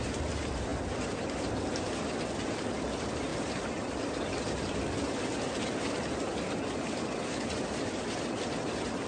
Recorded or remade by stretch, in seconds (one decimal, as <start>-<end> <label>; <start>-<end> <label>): 0.0-0.7 recorded; 0.7-1.3 remade; 1.3-3.3 recorded; 3.3-5.2 remade; 5.2-9.1 recorded